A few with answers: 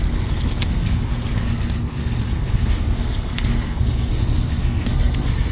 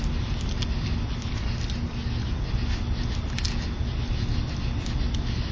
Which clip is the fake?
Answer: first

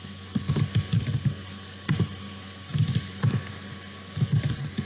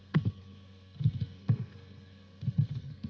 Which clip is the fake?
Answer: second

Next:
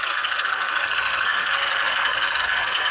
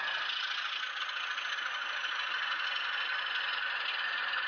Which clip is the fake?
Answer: first